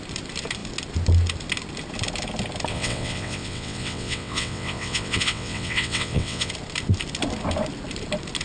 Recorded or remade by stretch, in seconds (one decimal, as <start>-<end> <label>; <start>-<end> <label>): 0.0-2.7 recorded; 2.7-6.5 remade; 6.5-8.4 recorded

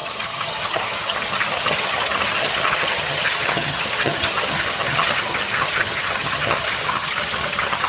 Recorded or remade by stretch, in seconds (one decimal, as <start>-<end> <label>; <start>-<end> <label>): 0.0-7.9 remade

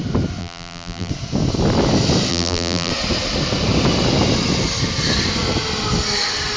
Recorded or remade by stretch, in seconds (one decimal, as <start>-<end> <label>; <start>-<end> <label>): 0.0-0.4 recorded; 0.4-1.1 remade; 1.1-2.3 recorded; 2.3-2.9 remade; 2.9-6.6 recorded

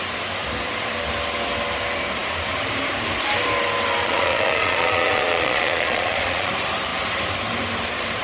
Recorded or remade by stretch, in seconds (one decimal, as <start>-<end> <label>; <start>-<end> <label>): 0.0-4.0 recorded; 4.0-6.5 remade; 6.5-8.2 recorded

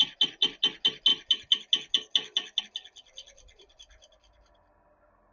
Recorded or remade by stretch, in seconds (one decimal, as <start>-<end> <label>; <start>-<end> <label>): 0.0-5.3 recorded